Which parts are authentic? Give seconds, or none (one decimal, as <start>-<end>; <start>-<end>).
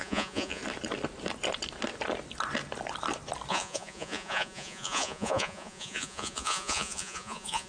0.6-3.5